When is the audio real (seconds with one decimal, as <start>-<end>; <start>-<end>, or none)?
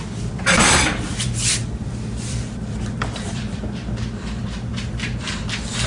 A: none